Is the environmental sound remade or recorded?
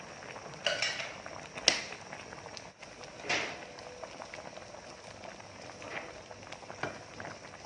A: recorded